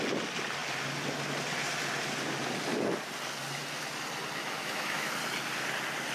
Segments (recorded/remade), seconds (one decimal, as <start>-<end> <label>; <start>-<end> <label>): 0.0-4.4 recorded; 4.4-5.1 remade; 5.1-6.1 recorded